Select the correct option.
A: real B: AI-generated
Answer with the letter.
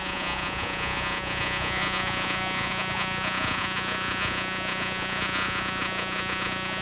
B